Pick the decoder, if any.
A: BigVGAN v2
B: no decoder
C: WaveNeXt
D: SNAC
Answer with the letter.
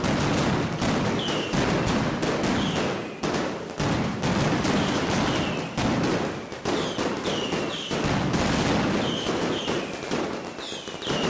B